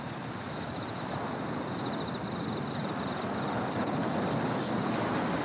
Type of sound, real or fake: real